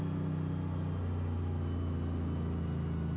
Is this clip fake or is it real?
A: real